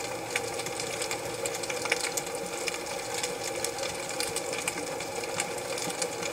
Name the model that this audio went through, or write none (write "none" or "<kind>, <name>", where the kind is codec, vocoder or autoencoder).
none